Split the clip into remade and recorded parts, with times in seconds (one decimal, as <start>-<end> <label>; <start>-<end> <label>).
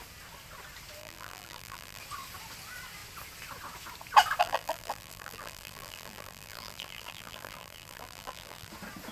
0.0-1.0 recorded; 1.0-2.0 remade; 2.0-4.4 recorded; 4.4-8.7 remade; 8.7-9.1 recorded